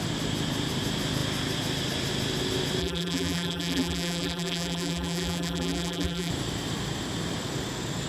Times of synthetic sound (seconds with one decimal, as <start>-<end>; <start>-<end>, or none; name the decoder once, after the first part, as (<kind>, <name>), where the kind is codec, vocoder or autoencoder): 2.8-6.3 (vocoder, BigVGAN v2)